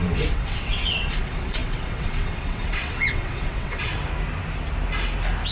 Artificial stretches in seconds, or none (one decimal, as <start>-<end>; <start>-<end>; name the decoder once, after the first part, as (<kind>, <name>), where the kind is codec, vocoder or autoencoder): 0.0-3.9 (vocoder, WaveNeXt)